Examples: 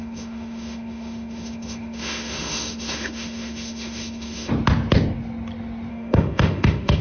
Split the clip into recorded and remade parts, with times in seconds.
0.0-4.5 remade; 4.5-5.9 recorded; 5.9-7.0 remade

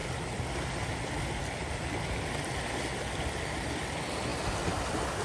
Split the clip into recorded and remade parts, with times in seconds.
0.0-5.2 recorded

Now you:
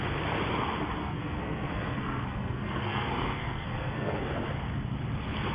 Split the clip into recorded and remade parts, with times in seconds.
0.0-1.0 recorded; 1.0-4.3 remade; 4.3-5.5 recorded

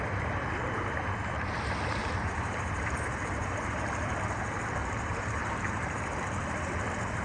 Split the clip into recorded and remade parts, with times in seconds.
0.0-2.0 recorded; 2.0-4.1 remade; 4.1-4.8 recorded; 4.8-6.1 remade; 6.1-7.2 recorded

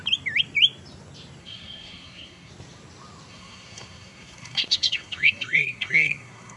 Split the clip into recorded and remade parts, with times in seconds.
0.0-1.4 recorded; 1.4-2.5 remade; 2.5-3.3 recorded; 3.3-6.6 remade

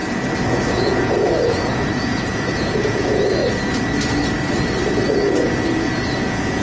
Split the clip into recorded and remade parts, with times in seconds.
0.0-0.7 recorded; 0.7-3.4 remade; 3.4-5.4 recorded; 5.4-6.6 remade